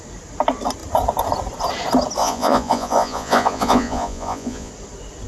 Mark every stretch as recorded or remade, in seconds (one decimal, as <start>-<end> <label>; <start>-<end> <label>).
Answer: 0.0-2.2 recorded; 2.2-4.7 remade; 4.7-5.3 recorded